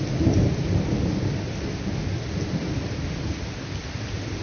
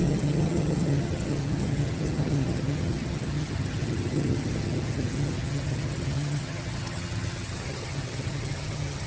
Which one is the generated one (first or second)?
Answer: second